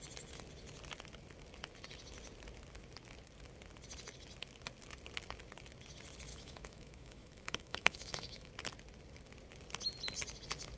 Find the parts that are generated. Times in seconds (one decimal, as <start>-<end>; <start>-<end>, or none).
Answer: 6.3-8.5